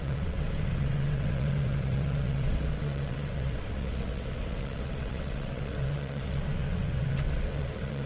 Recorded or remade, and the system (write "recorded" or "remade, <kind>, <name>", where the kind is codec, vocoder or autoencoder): remade, vocoder, WaveNeXt